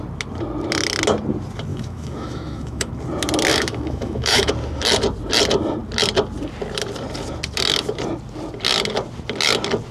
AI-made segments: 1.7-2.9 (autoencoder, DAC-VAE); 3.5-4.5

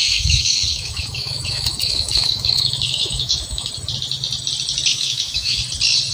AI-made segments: 0.0-3.7 (autoencoder, DAC-VAE); 4.9-5.6